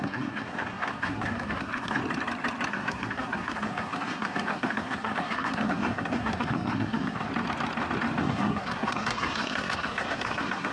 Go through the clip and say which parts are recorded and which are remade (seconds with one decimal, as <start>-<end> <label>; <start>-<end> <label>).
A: 0.0-2.0 remade; 2.0-2.7 recorded; 2.7-7.3 remade; 7.3-8.2 recorded; 8.2-10.7 remade